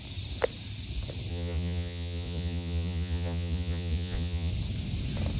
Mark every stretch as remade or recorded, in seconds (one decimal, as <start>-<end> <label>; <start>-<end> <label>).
0.0-1.3 recorded; 1.3-4.5 remade; 4.5-5.4 recorded